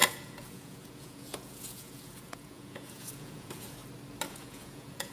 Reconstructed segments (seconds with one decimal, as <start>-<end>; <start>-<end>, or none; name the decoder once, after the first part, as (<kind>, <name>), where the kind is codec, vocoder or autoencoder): 0.0-3.8 (vocoder, Vocos); 4.3-5.1